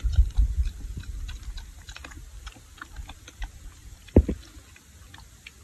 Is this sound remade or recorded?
recorded